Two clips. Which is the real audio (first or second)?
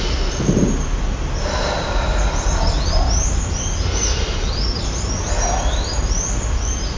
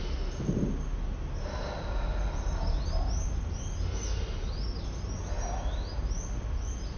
second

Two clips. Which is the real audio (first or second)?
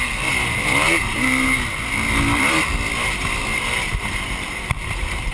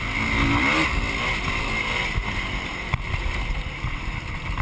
second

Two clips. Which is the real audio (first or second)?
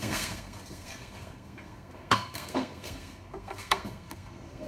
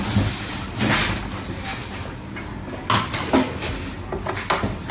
second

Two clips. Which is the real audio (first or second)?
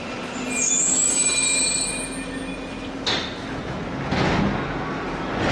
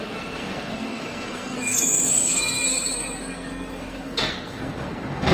first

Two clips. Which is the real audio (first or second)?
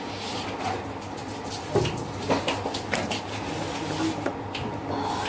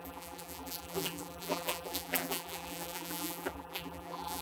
first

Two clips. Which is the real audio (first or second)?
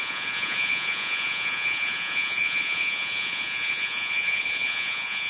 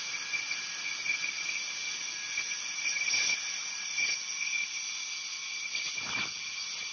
second